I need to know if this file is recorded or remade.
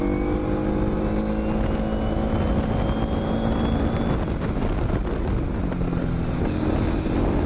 recorded